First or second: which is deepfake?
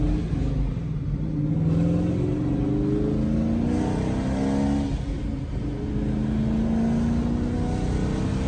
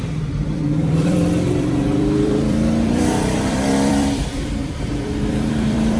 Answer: second